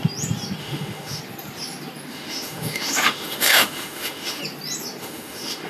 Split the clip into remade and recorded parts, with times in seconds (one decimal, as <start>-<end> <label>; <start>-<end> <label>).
0.0-0.6 recorded; 0.6-1.2 remade; 1.2-2.1 recorded; 2.1-4.4 remade; 4.4-5.0 recorded; 5.0-5.7 remade

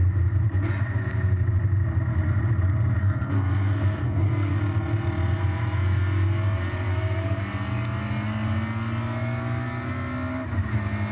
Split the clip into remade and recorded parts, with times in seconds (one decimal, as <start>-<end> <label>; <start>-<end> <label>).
0.0-3.0 recorded; 3.0-4.6 remade; 4.6-6.9 recorded; 6.9-7.4 remade; 7.4-11.1 recorded

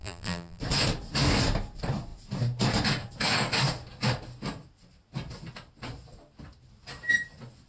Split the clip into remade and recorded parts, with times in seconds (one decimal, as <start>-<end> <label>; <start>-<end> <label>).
0.0-0.6 remade; 0.6-7.7 recorded

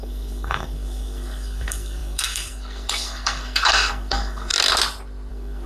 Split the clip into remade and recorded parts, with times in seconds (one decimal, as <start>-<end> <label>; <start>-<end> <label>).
0.0-4.5 remade; 4.5-5.3 recorded; 5.3-5.7 remade